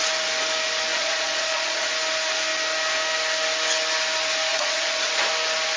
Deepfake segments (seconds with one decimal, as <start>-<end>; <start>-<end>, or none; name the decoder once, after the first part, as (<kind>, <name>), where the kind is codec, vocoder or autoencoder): 0.9-1.9 (vocoder, Vocos); 4.5-5.3